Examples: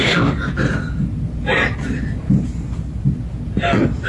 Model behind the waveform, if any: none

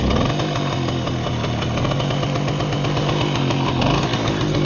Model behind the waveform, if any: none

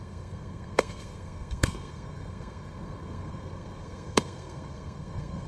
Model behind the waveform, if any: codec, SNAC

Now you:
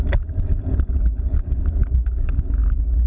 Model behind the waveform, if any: none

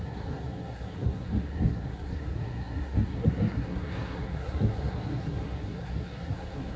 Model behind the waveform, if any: codec, SNAC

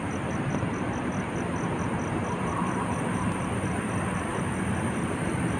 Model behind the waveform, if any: none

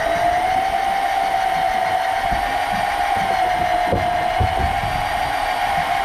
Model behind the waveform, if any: none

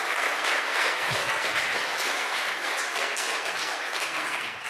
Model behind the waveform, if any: codec, SNAC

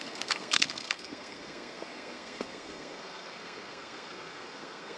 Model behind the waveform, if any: codec, SNAC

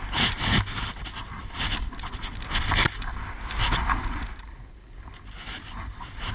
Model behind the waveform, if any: none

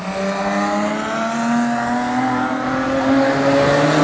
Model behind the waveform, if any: none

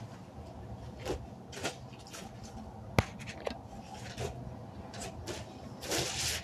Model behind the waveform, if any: none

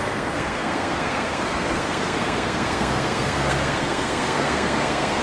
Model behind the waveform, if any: codec, SNAC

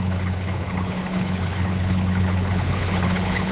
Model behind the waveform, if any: codec, HILCodec